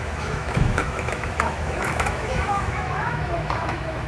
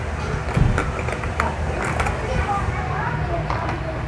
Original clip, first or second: second